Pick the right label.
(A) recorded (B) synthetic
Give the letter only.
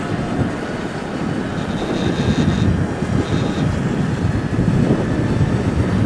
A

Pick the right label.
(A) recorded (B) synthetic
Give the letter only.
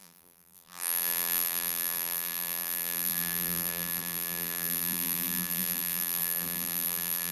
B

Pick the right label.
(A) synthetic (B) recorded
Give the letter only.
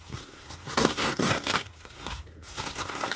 A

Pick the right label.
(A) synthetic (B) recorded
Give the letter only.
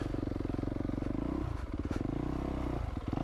B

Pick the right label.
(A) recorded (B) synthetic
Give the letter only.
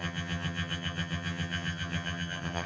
B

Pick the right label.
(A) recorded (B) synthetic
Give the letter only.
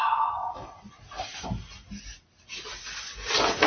A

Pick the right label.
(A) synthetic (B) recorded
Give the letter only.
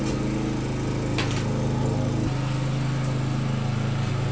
B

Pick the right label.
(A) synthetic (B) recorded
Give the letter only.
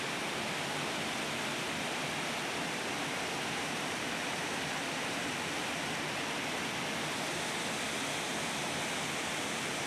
B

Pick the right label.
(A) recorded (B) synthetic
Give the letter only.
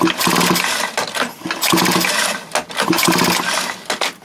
A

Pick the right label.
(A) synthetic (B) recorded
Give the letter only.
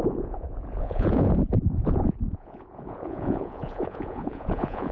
A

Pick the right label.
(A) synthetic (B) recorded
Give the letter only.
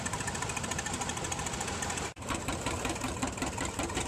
A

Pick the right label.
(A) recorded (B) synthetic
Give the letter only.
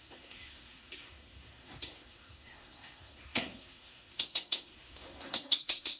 B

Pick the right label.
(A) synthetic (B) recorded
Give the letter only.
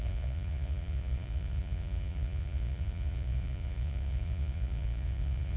A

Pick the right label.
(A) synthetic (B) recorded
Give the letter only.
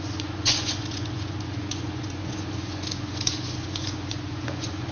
A